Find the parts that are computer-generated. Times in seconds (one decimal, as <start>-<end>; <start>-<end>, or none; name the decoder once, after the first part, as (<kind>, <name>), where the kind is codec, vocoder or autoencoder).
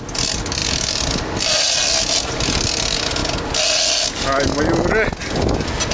0.6-2.0 (vocoder, BigVGAN v2)